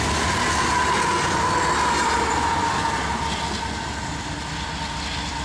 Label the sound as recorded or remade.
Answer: recorded